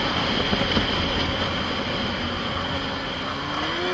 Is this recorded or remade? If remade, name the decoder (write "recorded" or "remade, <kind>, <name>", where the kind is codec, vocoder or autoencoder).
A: recorded